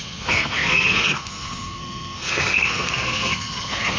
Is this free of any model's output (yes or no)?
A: no